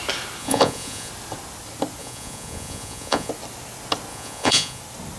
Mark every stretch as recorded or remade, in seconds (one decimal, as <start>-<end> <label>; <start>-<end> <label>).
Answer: 0.0-0.4 recorded; 0.4-1.1 remade; 1.1-2.0 recorded; 2.0-3.3 remade; 3.3-4.1 recorded; 4.1-4.8 remade; 4.8-5.2 recorded